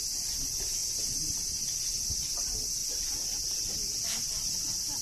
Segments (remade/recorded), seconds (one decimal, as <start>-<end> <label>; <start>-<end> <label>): 0.0-5.0 recorded